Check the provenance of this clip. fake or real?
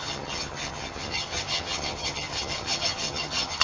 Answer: fake